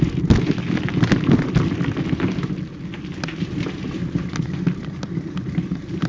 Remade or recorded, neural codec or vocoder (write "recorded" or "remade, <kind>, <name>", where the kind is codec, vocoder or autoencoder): recorded